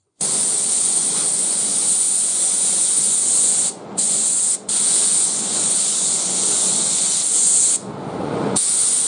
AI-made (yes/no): yes